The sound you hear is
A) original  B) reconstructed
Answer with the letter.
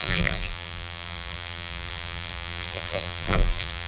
B